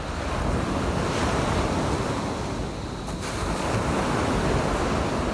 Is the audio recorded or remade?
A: recorded